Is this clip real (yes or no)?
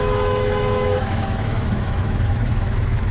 no